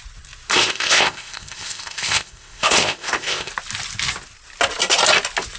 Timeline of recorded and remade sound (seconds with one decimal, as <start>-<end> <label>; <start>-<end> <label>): 0.0-0.5 recorded; 0.5-3.5 remade; 3.5-5.6 recorded